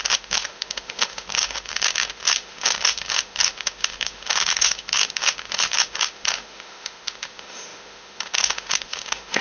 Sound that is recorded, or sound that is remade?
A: remade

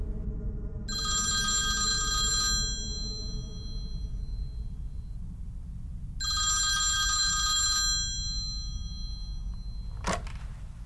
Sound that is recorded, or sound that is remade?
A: recorded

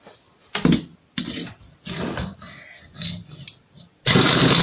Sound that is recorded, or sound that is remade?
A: recorded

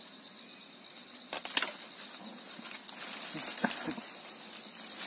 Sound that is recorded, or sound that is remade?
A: recorded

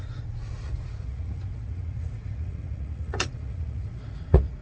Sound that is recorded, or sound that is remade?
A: remade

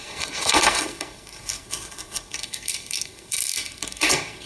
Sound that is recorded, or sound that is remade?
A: remade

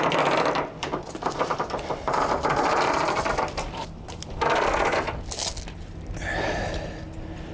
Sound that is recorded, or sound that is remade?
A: recorded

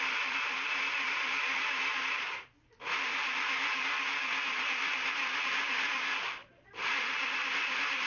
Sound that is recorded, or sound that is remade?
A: recorded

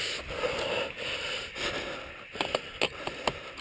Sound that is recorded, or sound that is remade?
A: recorded